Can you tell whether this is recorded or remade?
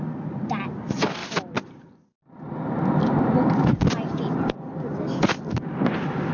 recorded